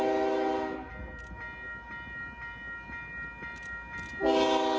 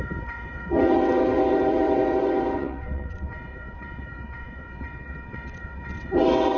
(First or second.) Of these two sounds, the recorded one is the first